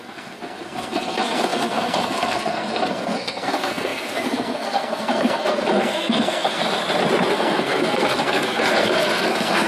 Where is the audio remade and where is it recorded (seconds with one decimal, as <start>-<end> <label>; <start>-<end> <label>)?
0.0-6.6 remade; 6.6-7.3 recorded; 7.3-9.7 remade